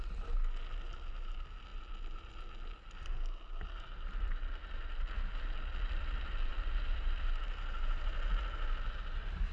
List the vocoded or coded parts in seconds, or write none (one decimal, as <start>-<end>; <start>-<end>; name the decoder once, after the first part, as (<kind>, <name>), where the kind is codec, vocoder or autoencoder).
none